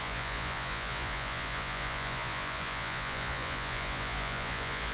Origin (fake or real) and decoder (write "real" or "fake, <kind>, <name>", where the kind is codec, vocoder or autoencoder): fake, vocoder, Vocos